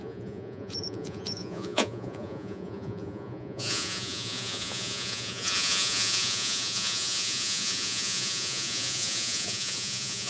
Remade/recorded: remade